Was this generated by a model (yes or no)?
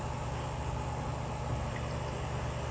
no